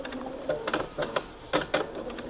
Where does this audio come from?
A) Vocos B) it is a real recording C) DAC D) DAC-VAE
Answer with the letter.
B